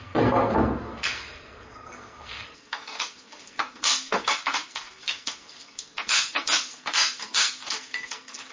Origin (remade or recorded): remade